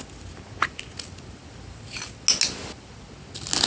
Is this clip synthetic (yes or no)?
no